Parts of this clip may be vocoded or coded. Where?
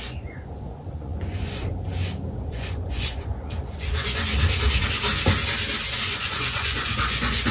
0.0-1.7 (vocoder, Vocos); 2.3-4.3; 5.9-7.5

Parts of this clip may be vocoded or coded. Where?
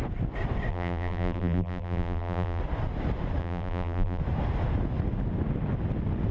0.7-2.6 (vocoder, BigVGAN v2); 3.4-4.2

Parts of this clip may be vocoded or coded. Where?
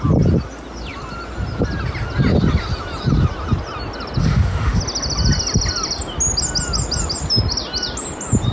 4.2-4.8 (autoencoder, DAC-VAE)